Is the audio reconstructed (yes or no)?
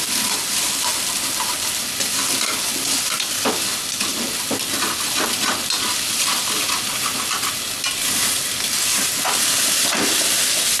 no